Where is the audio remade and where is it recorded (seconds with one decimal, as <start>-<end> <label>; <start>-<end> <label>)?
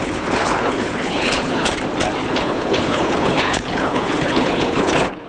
0.0-1.7 remade; 1.7-2.3 recorded; 2.3-5.3 remade